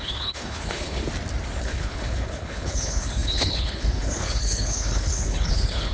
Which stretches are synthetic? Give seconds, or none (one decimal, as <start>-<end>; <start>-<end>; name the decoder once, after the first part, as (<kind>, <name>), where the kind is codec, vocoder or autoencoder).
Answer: 0.0-1.0 (codec, HILCodec); 1.6-5.9